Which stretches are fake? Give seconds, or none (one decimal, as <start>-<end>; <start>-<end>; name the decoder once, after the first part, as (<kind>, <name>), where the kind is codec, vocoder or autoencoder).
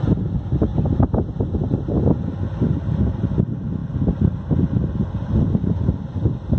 none